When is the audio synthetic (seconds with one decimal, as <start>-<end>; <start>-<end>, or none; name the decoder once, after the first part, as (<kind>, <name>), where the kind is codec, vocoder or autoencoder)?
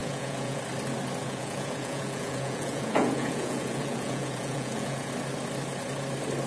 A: 0.0-0.6 (vocoder, Vocos); 1.2-5.1